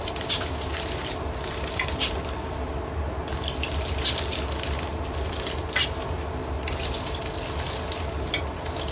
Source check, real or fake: real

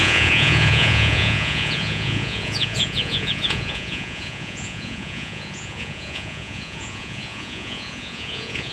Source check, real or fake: fake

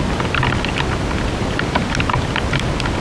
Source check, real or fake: real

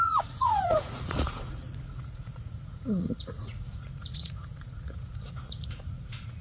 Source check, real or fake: fake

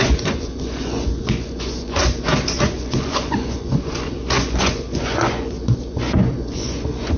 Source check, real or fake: fake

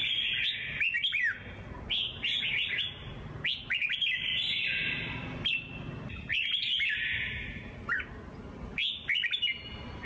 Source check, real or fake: real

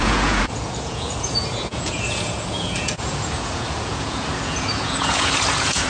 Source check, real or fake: fake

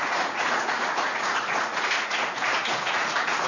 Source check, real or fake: fake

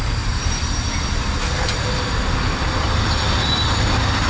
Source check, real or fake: real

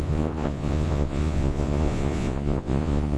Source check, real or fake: fake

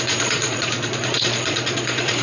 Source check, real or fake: fake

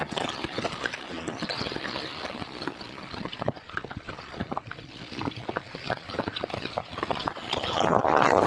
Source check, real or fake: fake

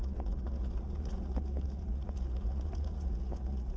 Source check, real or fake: fake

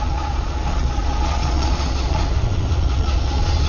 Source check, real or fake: fake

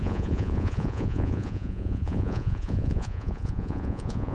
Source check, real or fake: fake